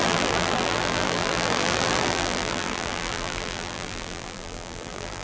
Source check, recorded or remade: remade